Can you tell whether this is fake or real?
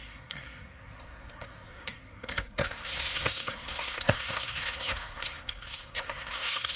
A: fake